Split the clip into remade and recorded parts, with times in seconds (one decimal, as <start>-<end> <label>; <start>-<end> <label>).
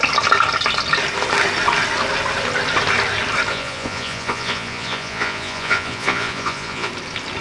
0.0-3.5 recorded; 3.5-6.9 remade; 6.9-7.4 recorded